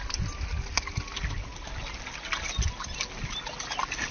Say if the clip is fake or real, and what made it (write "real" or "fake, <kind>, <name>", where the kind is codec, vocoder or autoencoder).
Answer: real